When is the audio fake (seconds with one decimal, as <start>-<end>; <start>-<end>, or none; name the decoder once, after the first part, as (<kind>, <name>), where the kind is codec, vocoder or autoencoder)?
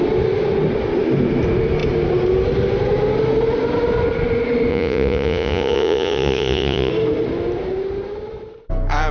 4.7-6.9 (vocoder, Vocos)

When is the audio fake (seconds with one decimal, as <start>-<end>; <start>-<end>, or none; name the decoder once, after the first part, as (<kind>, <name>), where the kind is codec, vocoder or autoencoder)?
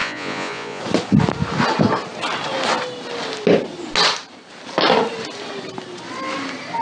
0.0-0.8 (vocoder, Vocos)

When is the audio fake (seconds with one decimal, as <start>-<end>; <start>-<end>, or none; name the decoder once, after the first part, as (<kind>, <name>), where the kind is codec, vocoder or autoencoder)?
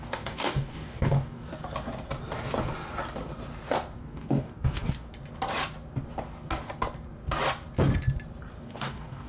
0.0-1.5 (codec, DAC); 4.0-5.1; 8.6-9.3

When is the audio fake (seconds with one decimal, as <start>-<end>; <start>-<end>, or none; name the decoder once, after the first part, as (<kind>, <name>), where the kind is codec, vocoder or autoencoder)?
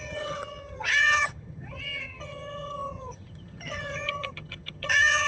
0.0-5.3 (vocoder, HiFi-GAN)